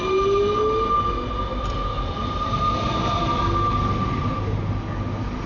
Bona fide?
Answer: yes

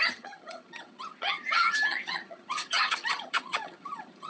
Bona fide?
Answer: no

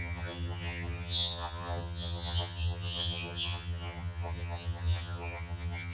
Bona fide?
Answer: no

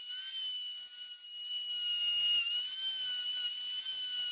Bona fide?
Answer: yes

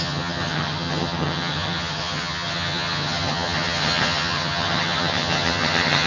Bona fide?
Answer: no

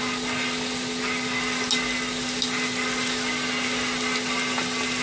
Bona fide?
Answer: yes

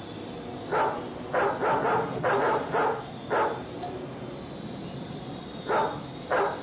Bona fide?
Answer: yes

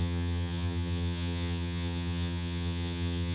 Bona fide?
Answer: no